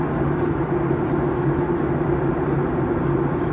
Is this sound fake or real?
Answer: real